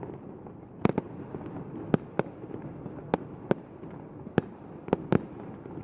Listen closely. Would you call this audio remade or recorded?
recorded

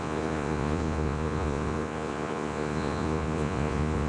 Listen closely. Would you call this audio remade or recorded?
remade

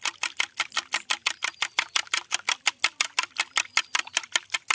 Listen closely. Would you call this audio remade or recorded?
recorded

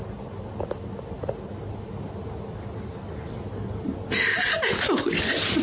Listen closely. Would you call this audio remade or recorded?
recorded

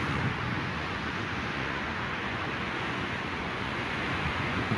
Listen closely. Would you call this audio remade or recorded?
remade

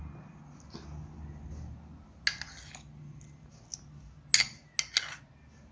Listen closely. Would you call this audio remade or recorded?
recorded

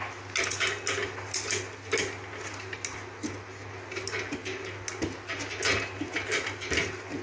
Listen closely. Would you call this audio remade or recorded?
recorded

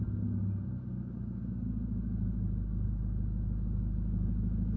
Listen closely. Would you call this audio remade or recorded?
recorded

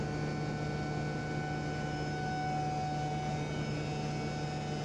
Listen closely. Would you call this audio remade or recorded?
recorded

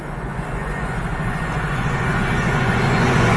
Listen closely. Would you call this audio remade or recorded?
remade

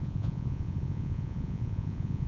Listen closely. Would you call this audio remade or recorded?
remade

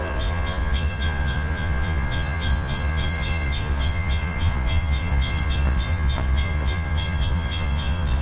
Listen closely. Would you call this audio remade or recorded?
remade